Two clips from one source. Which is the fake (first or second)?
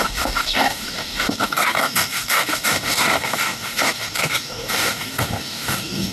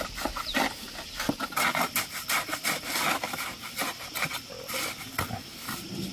first